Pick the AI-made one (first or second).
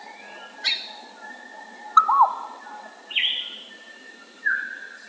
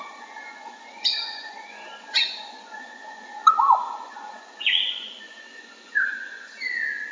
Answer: second